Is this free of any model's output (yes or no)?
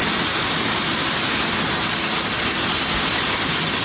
yes